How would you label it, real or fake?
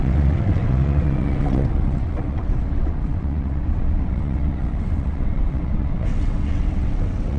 fake